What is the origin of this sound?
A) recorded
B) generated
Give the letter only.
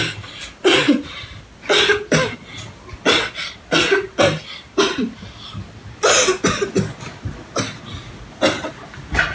A